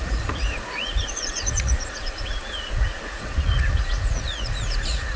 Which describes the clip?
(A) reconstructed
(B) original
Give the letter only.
A